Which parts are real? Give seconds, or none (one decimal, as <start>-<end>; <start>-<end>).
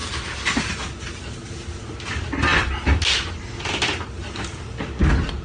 0.0-5.4